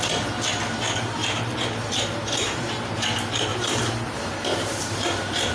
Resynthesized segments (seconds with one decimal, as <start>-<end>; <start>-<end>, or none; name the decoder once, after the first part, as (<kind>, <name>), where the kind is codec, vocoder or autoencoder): 1.2-2.7 (vocoder, BigVGAN v2); 3.5-5.5